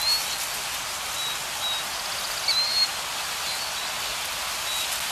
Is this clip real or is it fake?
real